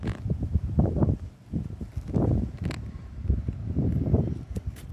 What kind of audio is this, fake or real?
real